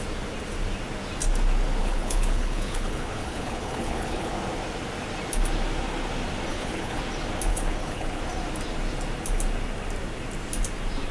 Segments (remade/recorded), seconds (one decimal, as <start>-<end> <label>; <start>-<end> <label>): 0.0-1.8 recorded; 1.8-4.3 remade; 4.3-6.5 recorded; 6.5-7.0 remade; 7.0-7.5 recorded; 7.5-8.2 remade; 8.2-11.1 recorded